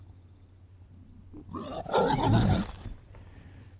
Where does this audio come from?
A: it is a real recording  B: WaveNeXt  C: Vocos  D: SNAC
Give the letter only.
A